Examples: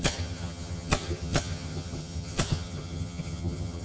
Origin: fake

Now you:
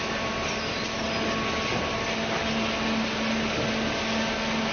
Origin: real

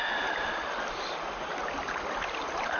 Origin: real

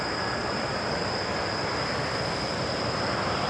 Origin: real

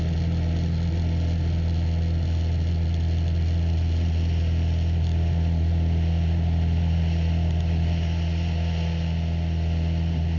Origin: real